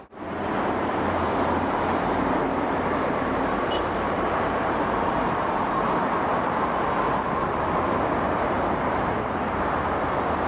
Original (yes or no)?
no